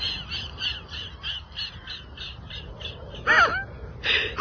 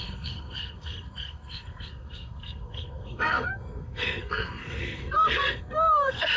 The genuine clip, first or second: first